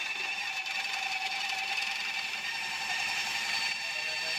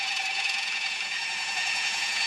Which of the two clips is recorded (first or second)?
first